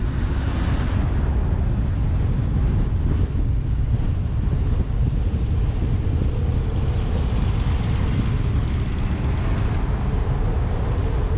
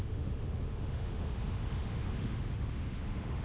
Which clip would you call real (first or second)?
first